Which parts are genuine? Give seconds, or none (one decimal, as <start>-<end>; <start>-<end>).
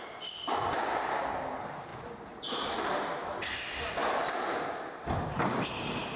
0.0-6.2